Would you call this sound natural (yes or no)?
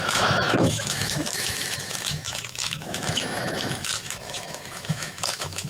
no